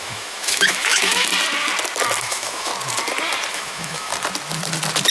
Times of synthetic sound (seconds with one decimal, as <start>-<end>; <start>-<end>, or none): 0.0-1.3; 2.2-2.7; 3.5-4.1